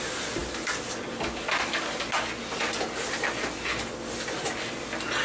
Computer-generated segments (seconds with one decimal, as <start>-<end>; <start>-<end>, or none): none